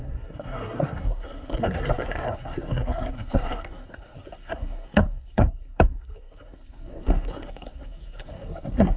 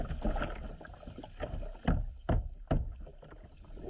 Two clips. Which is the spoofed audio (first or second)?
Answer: first